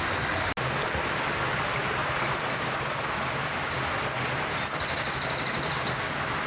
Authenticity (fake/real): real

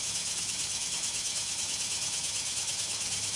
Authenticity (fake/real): fake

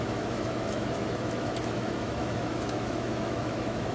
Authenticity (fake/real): fake